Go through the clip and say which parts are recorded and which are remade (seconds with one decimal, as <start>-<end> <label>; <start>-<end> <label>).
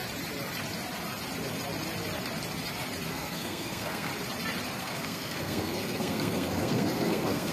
0.0-3.1 recorded; 3.1-4.1 remade; 4.1-4.8 recorded; 4.8-7.5 remade